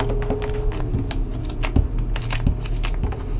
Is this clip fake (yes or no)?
no